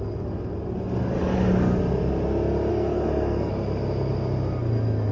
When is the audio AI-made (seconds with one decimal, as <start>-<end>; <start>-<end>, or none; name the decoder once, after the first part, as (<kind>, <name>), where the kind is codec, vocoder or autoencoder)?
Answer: 2.7-3.5 (codec, SNAC)